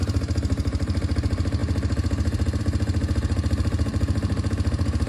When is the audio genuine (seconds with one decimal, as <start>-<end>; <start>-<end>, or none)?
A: none